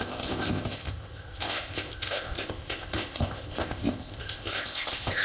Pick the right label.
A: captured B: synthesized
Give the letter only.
B